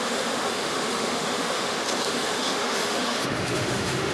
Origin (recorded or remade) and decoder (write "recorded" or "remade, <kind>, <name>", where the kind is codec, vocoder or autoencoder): remade, autoencoder, DAC-VAE